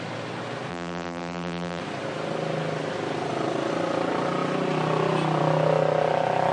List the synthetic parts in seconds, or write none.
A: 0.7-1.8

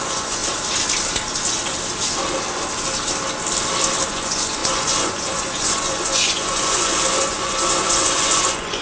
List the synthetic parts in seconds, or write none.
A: 0.0-0.4; 4.1-8.8

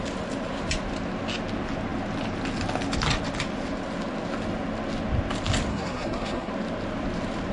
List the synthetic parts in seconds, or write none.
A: 5.7-6.5

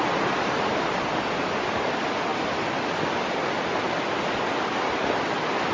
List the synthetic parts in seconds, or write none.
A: none

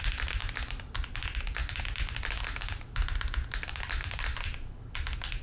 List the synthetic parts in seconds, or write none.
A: 0.0-0.4; 1.1-5.4

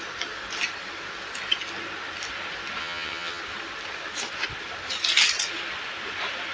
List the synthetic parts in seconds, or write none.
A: 2.8-3.4

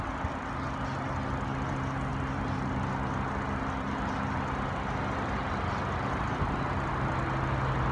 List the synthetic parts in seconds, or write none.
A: 2.1-2.9